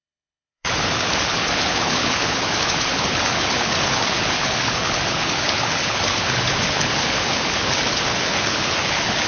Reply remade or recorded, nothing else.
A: remade